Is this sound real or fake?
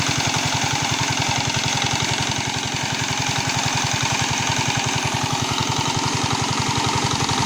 fake